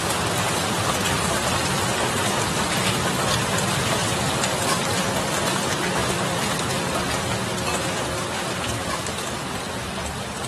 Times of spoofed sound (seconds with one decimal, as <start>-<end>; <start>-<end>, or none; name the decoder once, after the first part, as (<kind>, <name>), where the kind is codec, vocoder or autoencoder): 4.0-5.3 (vocoder, BigVGAN v2); 6.0-6.6

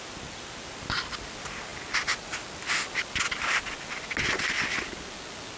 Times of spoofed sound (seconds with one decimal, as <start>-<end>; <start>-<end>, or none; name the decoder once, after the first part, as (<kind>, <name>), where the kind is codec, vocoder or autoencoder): none

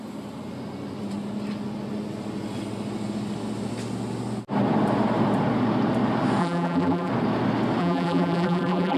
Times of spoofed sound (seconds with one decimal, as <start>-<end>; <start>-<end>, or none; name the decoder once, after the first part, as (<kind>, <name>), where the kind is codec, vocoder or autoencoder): 6.4-7.1 (vocoder, BigVGAN v2); 7.8-9.0

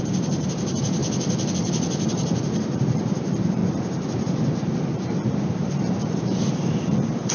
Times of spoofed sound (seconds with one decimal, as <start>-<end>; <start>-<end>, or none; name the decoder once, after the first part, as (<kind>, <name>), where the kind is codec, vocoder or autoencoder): 0.0-1.0 (vocoder, BigVGAN v2); 1.5-7.3

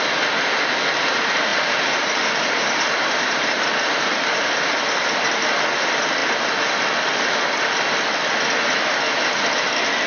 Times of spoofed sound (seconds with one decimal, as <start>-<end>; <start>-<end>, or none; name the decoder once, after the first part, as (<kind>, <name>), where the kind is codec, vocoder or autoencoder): 1.5-5.4 (vocoder, BigVGAN v2)

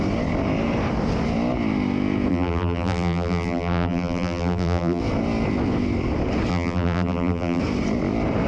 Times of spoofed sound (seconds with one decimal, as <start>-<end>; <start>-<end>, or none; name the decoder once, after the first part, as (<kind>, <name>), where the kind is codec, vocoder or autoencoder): 2.3-5.0 (vocoder, BigVGAN v2); 6.5-7.6

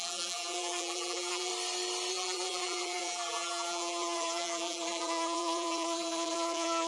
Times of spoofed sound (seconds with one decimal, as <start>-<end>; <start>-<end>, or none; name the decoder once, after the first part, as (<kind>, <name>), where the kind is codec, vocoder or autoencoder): 0.0-1.5 (vocoder, BigVGAN v2); 2.1-6.9

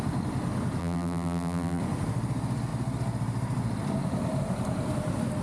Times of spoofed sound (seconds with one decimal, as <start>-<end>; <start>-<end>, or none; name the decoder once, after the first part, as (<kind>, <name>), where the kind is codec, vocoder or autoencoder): 0.8-1.8 (vocoder, BigVGAN v2)